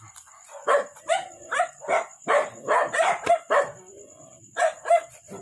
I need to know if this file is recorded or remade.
recorded